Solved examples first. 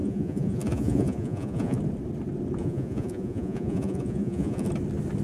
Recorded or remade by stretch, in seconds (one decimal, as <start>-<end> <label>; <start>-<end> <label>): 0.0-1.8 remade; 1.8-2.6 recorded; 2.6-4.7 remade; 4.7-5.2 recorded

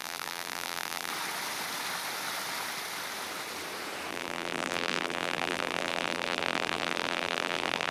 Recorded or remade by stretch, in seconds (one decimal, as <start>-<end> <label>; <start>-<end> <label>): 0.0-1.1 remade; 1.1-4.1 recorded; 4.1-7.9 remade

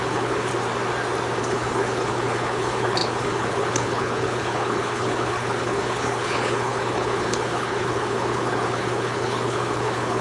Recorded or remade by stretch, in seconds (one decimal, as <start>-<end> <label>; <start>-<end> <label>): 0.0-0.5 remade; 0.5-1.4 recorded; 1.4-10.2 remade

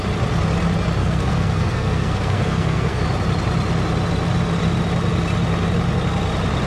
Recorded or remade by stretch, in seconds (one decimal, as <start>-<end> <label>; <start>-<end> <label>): 0.0-1.0 recorded; 1.0-3.0 remade; 3.0-6.7 recorded